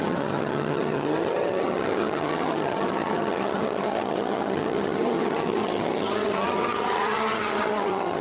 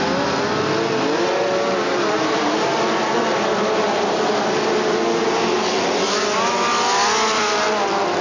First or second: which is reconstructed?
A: first